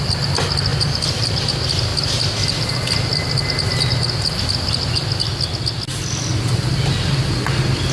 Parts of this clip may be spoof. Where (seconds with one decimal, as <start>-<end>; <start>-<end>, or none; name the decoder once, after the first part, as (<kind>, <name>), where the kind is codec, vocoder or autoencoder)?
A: 0.7-1.5 (vocoder, BigVGAN v2); 1.9-2.7